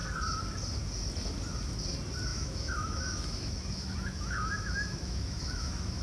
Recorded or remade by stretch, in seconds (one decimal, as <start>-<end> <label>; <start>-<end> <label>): 0.0-2.3 recorded; 2.3-6.0 remade